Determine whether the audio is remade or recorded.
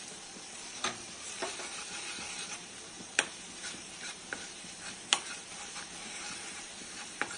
remade